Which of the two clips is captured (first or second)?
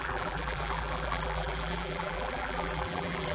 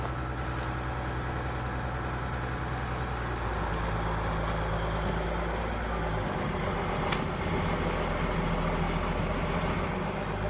second